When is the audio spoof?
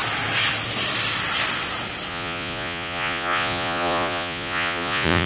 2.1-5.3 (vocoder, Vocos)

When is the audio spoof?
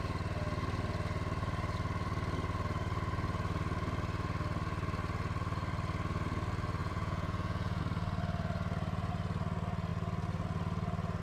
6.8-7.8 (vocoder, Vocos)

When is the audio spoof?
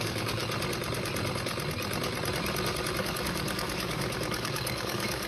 0.0-0.4 (codec, DAC); 3.0-5.3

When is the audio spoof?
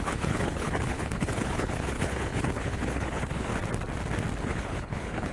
0.0-3.5 (codec, HILCodec); 4.4-5.3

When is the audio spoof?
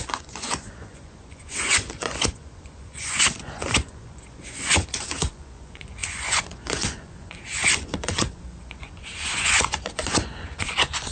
0.0-11.1 (vocoder, Vocos)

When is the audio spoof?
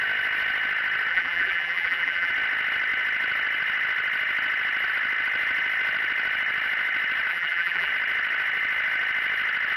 1.1-2.3 (vocoder, BigVGAN v2); 7.3-7.9